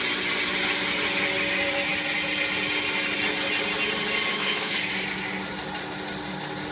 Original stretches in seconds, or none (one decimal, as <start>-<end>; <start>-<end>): 0.0-4.3; 4.9-6.7